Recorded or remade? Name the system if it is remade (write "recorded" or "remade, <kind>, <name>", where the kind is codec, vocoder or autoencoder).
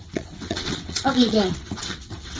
remade, vocoder, WaveNeXt